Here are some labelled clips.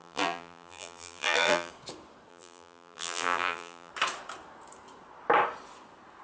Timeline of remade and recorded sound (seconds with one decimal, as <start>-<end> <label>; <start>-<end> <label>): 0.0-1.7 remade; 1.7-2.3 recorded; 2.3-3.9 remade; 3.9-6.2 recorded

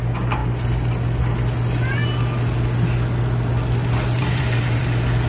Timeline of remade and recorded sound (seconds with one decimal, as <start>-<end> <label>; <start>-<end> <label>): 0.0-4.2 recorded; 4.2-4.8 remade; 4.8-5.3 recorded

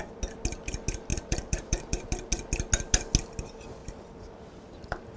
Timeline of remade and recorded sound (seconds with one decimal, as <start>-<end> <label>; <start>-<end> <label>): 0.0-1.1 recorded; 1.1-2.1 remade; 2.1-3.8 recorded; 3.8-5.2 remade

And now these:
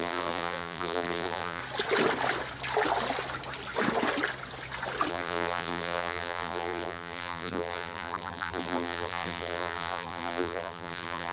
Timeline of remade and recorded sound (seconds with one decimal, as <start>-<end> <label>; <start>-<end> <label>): 0.0-1.6 remade; 1.6-5.1 recorded; 5.1-11.3 remade

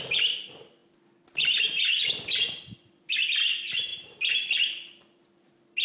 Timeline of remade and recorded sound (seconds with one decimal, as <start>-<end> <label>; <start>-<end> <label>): 0.0-0.8 remade; 0.8-2.5 recorded; 2.5-5.8 remade

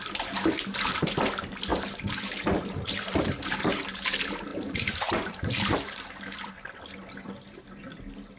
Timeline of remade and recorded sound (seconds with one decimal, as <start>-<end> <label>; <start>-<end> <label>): 0.0-1.7 recorded; 1.7-3.1 remade; 3.1-4.5 recorded; 4.5-6.5 remade; 6.5-8.4 recorded